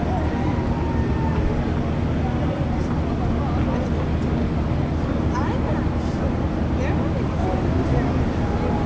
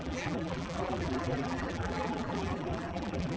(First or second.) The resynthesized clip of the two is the second